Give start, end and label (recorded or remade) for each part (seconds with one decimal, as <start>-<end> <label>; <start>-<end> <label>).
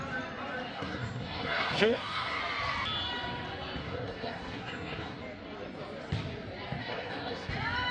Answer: 0.0-0.7 recorded; 0.7-2.4 remade; 2.4-3.8 recorded; 3.8-5.2 remade; 5.2-6.8 recorded; 6.8-7.5 remade; 7.5-7.9 recorded